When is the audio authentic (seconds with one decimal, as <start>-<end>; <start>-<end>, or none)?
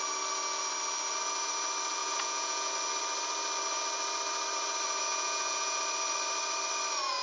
0.0-2.0; 2.7-5.1; 5.8-7.2